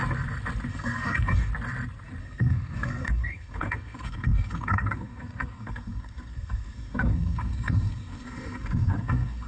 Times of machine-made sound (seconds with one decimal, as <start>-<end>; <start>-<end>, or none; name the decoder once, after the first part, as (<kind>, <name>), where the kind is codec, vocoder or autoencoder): 0.7-1.5 (codec, SNAC); 2.2-9.5